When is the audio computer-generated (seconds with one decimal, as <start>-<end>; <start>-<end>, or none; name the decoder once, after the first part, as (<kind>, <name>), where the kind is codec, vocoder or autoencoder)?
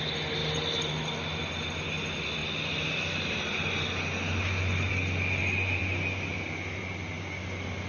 none